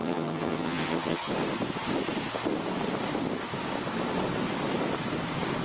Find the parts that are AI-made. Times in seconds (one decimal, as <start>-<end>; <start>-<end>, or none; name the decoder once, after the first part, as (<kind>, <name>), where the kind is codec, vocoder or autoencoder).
0.0-1.3 (vocoder, HiFi-GAN)